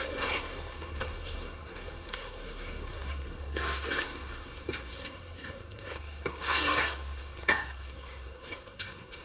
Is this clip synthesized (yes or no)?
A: yes